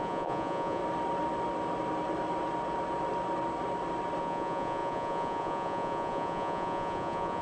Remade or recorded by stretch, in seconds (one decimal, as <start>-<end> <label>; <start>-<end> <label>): 0.0-0.8 remade; 0.8-4.2 recorded; 4.2-7.4 remade

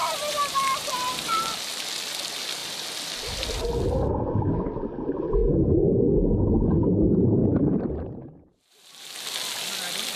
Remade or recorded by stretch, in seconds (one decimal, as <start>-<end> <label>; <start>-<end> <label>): 0.0-1.3 remade; 1.3-5.4 recorded; 5.4-6.0 remade; 6.0-7.4 recorded; 7.4-9.1 remade; 9.1-10.2 recorded

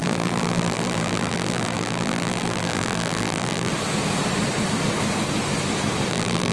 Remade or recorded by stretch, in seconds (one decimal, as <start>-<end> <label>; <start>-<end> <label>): 0.0-3.7 remade; 3.7-6.1 recorded; 6.1-6.5 remade